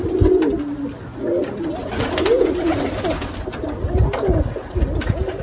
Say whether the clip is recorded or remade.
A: recorded